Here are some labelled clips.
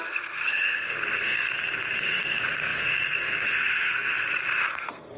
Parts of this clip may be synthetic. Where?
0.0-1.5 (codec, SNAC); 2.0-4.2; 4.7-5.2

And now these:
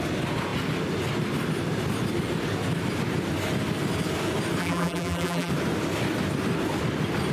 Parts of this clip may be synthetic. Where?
4.6-5.5 (vocoder, BigVGAN v2)

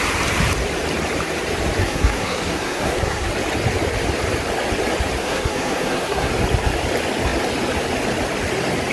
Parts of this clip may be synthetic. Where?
1.8-3.3 (codec, SNAC); 5.2-6.3

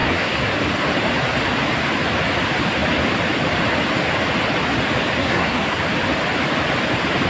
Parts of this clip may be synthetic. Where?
0.0-0.5 (codec, SNAC); 5.2-5.8

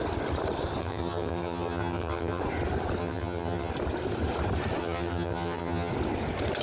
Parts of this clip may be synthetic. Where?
0.8-2.4 (vocoder, HiFi-GAN); 3.0-3.7; 4.8-5.9

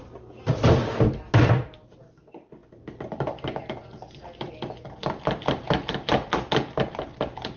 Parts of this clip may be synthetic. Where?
none

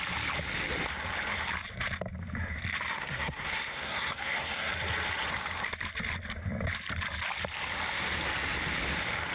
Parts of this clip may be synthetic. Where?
2.9-4.7 (codec, SNAC)